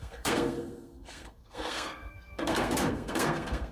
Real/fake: fake